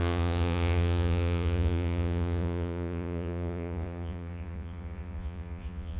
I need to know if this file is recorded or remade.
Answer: remade